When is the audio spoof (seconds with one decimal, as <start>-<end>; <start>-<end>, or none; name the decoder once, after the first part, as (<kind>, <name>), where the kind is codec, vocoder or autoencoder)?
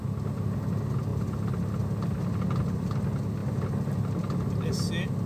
none